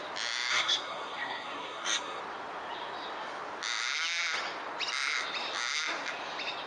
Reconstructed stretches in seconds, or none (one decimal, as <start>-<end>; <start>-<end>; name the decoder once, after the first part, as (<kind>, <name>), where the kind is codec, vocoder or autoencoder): 0.5-2.2 (codec, SNAC)

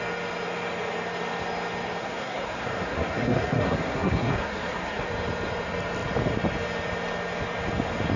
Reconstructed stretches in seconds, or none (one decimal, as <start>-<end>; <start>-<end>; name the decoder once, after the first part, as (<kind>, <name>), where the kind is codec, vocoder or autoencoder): 2.0-5.1 (codec, SNAC)

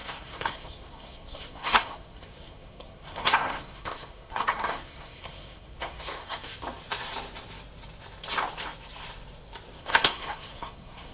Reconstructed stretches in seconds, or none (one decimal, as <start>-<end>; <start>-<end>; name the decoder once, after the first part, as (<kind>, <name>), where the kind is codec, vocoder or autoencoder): 0.0-6.5 (codec, SNAC); 9.8-11.1

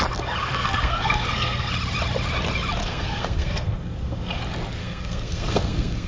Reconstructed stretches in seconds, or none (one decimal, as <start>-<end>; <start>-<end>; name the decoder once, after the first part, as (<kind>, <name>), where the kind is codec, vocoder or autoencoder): 0.4-1.7 (codec, SNAC); 2.8-4.3; 4.8-6.1

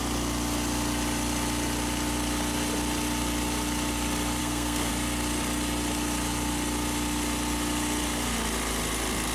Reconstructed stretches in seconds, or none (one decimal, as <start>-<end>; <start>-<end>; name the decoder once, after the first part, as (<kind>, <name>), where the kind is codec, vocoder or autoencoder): 4.4-4.9 (codec, SNAC)

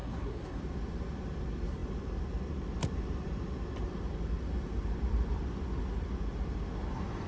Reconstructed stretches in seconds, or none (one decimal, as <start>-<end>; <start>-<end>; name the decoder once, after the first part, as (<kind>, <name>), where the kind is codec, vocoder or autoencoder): 0.0-0.6 (codec, SNAC)

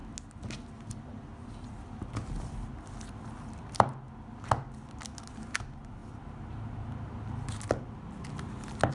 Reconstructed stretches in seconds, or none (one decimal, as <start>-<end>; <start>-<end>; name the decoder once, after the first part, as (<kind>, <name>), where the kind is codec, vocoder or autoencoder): none